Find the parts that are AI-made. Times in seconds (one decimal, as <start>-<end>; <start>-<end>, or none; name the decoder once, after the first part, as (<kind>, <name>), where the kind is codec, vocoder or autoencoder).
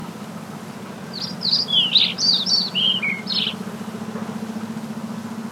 none